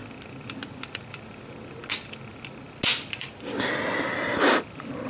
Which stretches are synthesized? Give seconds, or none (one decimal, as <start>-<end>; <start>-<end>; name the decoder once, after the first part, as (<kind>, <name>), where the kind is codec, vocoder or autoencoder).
none